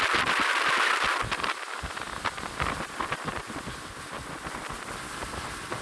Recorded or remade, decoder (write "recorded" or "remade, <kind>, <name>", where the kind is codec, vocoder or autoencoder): recorded